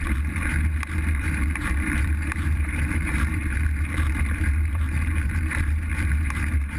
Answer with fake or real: fake